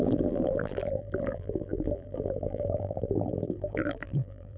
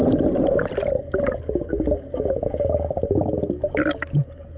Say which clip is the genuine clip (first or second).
second